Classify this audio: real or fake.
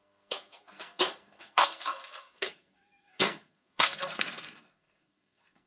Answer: fake